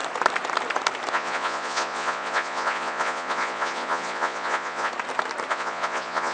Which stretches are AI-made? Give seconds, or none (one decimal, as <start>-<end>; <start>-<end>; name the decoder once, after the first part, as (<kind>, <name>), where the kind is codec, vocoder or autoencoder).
1.1-4.9 (vocoder, Vocos); 5.5-6.3